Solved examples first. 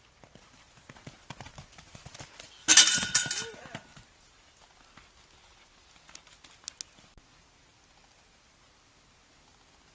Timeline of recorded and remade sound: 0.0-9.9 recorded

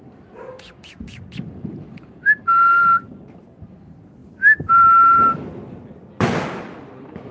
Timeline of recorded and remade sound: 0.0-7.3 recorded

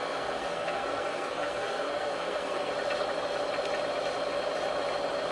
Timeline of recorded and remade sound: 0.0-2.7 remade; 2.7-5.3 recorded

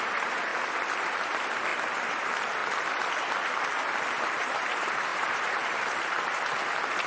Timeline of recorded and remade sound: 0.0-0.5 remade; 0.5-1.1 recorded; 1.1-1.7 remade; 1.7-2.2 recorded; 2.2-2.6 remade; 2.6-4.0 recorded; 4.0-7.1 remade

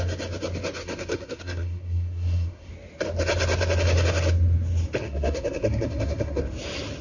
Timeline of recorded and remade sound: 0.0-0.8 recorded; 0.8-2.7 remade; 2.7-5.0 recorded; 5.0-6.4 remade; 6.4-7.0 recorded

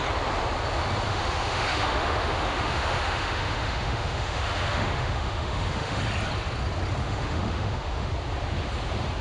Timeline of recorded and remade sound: 0.0-1.1 recorded; 1.1-6.0 remade; 6.0-7.0 recorded; 7.0-8.1 remade; 8.1-9.2 recorded

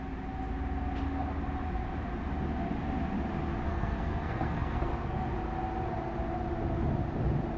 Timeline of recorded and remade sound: 0.0-3.7 recorded; 3.7-5.3 remade; 5.3-7.6 recorded